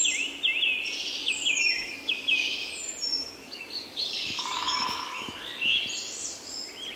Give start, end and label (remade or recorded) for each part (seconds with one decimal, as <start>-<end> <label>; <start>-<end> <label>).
0.0-1.2 recorded; 1.2-2.7 remade; 2.7-3.1 recorded; 3.1-5.8 remade; 5.8-7.0 recorded